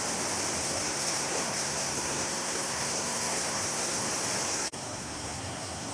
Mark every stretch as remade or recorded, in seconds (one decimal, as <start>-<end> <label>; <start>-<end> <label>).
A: 0.0-0.6 recorded; 0.6-4.1 remade; 4.1-4.5 recorded; 4.5-5.9 remade